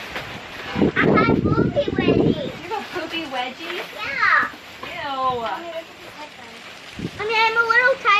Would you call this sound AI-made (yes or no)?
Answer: no